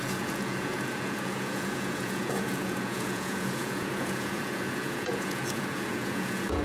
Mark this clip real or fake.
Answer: fake